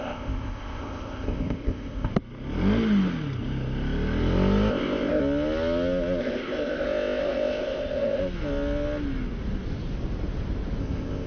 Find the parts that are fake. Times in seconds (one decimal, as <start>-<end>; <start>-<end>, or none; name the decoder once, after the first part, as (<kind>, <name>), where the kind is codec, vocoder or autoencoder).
0.0-2.1 (codec, ZipCodec); 4.7-5.2; 6.2-8.2; 10.8-11.3